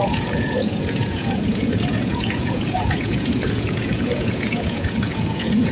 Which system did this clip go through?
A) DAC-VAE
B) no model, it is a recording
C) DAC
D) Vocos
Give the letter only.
D